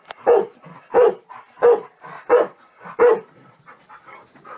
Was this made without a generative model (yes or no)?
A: yes